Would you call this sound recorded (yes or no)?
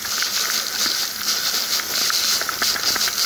yes